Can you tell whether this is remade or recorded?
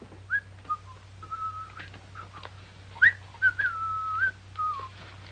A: recorded